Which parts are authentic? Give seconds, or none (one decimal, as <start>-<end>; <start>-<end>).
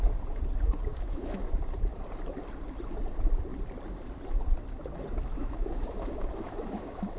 0.0-0.9; 1.6-5.3